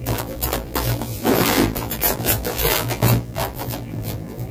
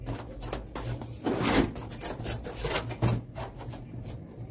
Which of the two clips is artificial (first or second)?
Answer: first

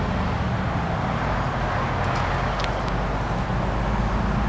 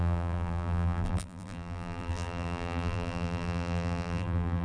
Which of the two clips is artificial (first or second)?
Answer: second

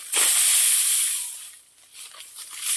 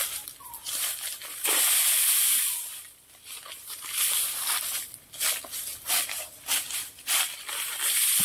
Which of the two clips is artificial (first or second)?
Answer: second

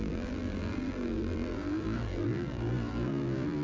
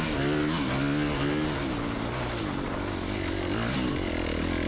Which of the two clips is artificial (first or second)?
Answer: first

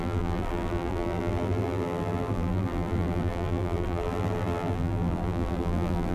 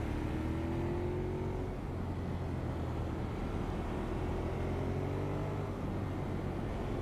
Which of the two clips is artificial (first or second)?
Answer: first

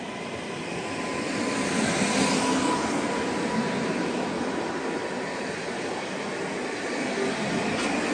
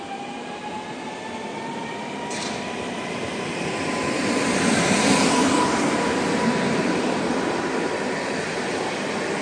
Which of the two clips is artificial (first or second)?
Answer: second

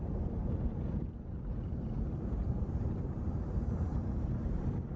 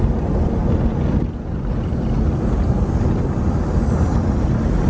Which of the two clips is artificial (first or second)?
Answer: first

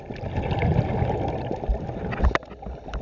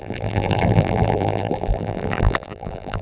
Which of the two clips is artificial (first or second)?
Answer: second